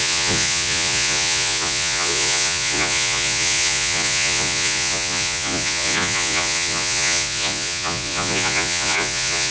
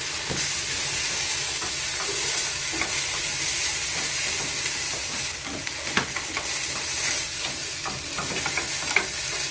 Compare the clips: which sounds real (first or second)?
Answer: second